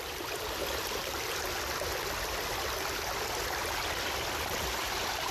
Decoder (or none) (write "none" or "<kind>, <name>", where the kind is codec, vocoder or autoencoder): none